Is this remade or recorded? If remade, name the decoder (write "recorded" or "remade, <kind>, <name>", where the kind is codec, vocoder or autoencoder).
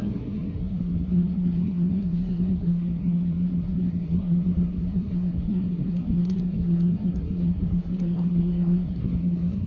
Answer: remade, codec, SNAC